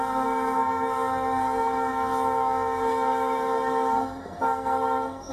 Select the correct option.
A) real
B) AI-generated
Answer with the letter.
B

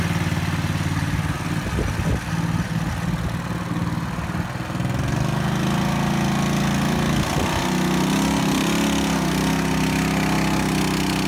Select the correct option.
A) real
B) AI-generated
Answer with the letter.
A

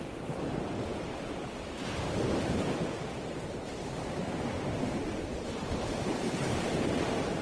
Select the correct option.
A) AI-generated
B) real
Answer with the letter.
A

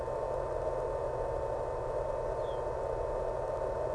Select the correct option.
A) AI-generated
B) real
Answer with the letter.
B